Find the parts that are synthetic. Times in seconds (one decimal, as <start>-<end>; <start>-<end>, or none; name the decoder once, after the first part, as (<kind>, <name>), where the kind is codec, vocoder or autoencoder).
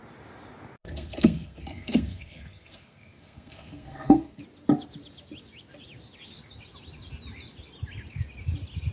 0.8-4.4 (codec, SNAC)